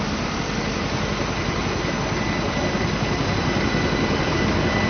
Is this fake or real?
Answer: real